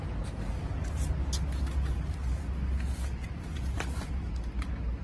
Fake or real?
real